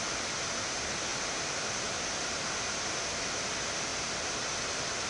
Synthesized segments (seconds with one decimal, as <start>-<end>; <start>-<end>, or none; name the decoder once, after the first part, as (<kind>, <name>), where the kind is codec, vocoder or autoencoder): 1.1-1.7 (vocoder, BigVGAN v2); 2.2-3.5; 3.9-5.1